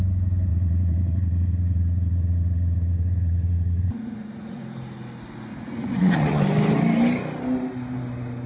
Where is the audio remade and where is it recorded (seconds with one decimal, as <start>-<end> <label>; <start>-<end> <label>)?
0.0-0.5 recorded; 0.5-4.6 remade; 4.6-5.5 recorded; 5.5-6.4 remade; 6.4-8.5 recorded